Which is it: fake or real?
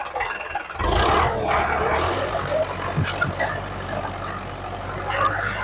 real